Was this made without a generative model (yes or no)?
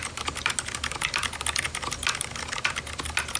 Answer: yes